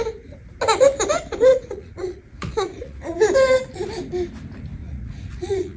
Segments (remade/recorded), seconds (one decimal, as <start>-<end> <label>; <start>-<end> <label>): 0.0-1.5 recorded; 1.5-3.2 remade; 3.2-4.8 recorded; 4.8-5.8 remade